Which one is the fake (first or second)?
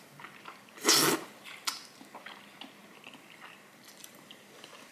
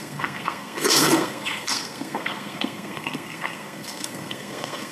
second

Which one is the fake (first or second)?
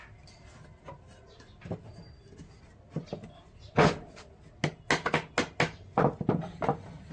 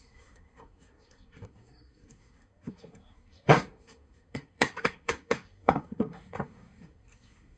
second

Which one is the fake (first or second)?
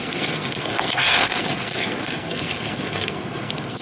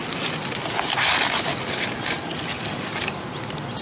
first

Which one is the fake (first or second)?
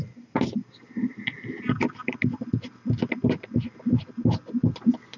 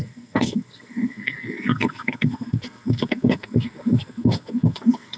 second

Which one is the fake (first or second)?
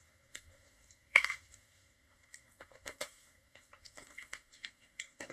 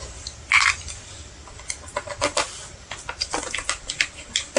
first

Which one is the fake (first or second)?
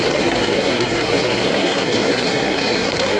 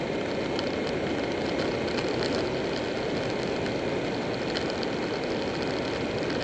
first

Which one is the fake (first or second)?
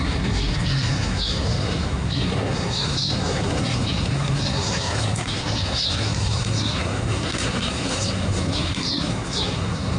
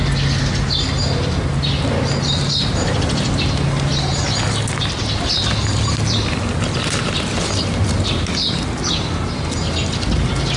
first